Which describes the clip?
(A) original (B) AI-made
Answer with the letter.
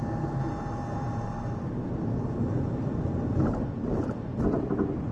A